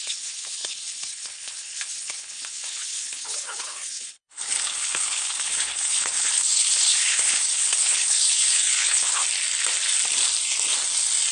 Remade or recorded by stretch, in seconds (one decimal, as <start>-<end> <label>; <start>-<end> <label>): 0.0-9.2 remade; 9.2-11.3 recorded